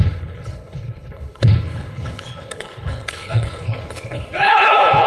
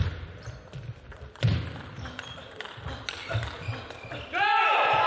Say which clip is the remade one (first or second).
first